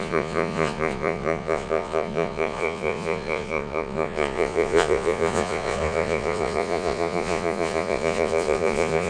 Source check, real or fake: fake